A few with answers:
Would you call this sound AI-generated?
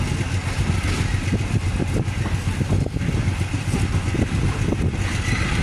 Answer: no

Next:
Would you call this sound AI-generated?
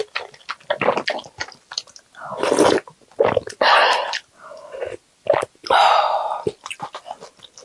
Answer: no